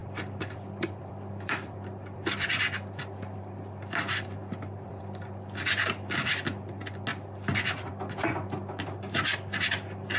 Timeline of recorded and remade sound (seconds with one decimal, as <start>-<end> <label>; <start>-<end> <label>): 0.0-5.0 remade; 5.0-10.2 recorded

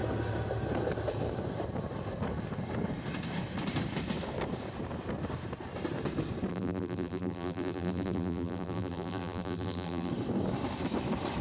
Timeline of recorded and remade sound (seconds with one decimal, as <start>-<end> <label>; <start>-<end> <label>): 0.0-6.5 recorded; 6.5-10.1 remade; 10.1-11.4 recorded

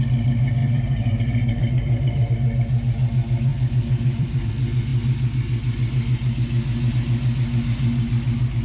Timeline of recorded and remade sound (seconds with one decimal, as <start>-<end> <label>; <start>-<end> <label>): 0.0-0.6 recorded; 0.6-2.3 remade; 2.3-3.5 recorded; 3.5-4.5 remade; 4.5-8.6 recorded